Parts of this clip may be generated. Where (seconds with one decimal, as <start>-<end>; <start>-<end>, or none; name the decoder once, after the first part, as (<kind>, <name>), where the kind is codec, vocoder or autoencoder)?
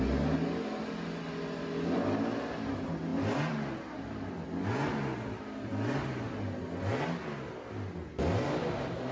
none